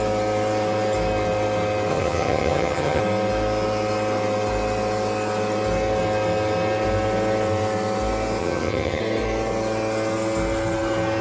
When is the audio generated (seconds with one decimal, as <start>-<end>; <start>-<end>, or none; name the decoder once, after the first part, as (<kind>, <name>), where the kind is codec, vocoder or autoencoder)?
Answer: 1.9-3.0 (vocoder, HiFi-GAN); 8.4-9.0